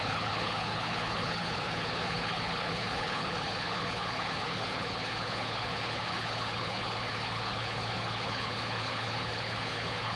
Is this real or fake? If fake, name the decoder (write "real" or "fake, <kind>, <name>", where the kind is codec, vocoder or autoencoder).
fake, codec, HILCodec